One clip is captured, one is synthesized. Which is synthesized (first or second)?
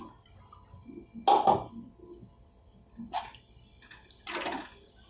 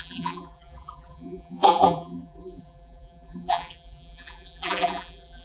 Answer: second